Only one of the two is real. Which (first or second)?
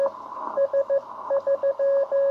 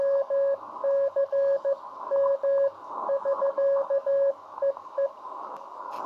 first